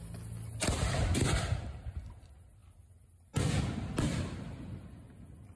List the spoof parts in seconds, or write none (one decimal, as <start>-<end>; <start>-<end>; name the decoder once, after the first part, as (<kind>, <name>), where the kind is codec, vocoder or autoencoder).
none